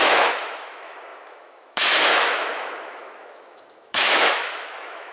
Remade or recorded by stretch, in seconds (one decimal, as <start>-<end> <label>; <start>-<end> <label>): 0.0-5.1 remade

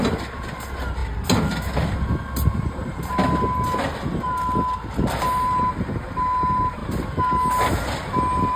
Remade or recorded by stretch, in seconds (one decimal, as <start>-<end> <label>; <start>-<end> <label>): 0.0-8.6 recorded

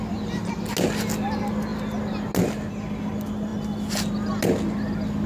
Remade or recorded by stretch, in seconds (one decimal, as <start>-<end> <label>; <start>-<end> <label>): 0.0-5.3 recorded

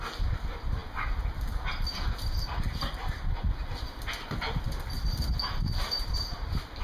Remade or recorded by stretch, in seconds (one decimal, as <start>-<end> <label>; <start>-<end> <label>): 0.0-6.8 recorded

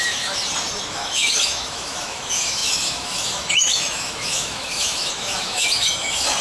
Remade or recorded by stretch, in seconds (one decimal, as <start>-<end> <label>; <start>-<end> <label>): 0.0-0.4 remade; 0.4-0.9 recorded; 0.9-6.4 remade

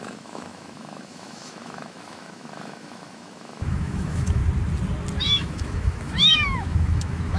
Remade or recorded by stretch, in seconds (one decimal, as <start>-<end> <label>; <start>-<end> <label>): 0.0-4.4 remade; 4.4-5.2 recorded; 5.2-7.4 remade

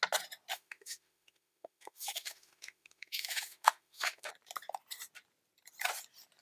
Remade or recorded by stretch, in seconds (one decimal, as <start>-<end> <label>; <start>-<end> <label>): 0.0-0.5 recorded; 0.5-4.3 remade; 4.3-6.4 recorded